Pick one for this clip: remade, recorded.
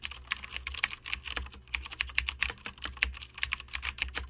recorded